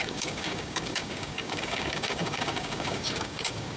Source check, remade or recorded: remade